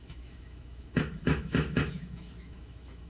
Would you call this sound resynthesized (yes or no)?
yes